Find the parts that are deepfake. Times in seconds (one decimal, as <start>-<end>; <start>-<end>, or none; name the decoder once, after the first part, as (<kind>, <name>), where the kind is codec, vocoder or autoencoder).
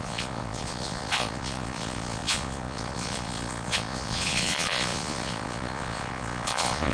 0.0-6.9 (vocoder, Vocos)